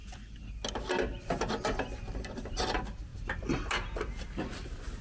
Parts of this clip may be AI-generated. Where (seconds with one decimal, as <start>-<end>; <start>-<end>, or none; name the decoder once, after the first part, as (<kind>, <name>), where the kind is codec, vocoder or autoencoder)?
none